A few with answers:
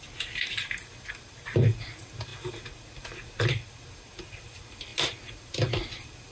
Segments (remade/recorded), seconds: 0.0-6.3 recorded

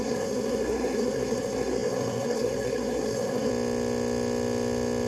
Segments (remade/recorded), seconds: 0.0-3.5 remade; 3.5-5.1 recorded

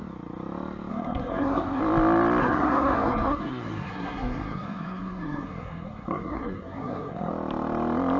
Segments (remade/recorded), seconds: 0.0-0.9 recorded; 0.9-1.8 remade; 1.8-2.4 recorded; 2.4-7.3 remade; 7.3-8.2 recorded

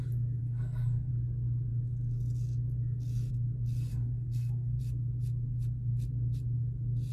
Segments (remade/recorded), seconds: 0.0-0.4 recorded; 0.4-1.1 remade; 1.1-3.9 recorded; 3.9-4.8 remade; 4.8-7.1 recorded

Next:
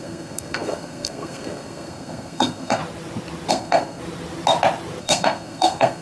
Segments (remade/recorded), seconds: 0.0-2.8 remade; 2.8-3.5 recorded; 3.5-4.0 remade; 4.0-5.0 recorded; 5.0-6.0 remade

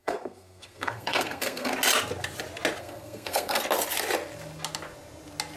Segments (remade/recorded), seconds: 0.0-1.7 remade; 1.7-2.8 recorded; 2.8-3.6 remade; 3.6-5.6 recorded

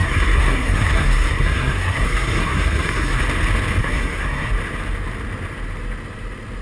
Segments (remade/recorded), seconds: 0.0-3.2 remade; 3.2-3.8 recorded; 3.8-4.5 remade; 4.5-6.6 recorded

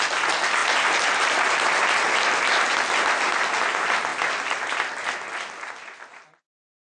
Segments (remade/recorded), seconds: 0.0-7.0 recorded